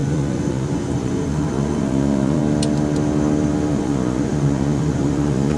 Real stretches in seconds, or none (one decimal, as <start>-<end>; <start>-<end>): 2.4-3.7